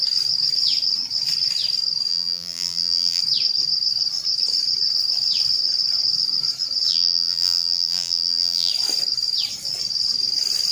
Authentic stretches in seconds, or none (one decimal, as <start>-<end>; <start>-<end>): 0.0-2.1; 3.2-6.9; 8.7-10.7